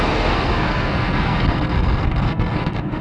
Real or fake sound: fake